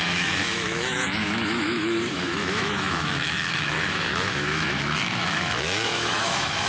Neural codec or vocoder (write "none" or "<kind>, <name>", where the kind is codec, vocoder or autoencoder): autoencoder, DAC-VAE